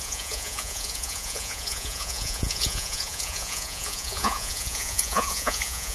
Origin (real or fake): fake